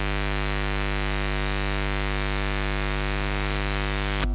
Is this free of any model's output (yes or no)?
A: yes